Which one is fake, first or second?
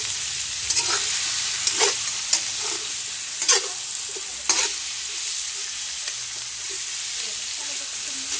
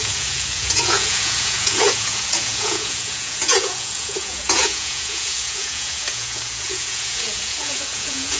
second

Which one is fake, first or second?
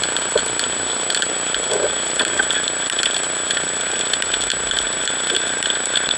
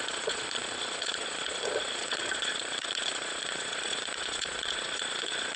second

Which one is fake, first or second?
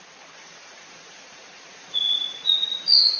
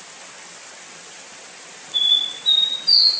first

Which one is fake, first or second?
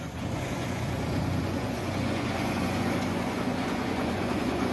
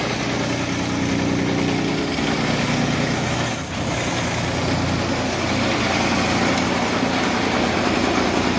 first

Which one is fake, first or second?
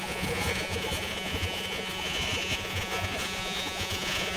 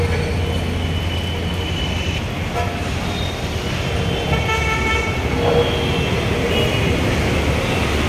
first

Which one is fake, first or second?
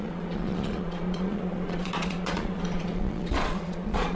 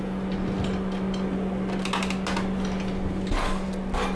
first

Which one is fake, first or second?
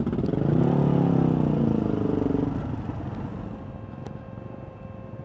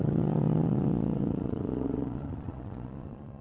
second